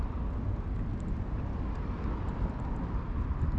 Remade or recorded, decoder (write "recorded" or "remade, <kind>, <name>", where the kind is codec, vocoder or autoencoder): recorded